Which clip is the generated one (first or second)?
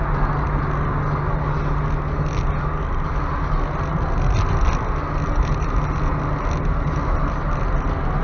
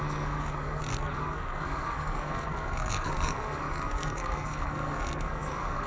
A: second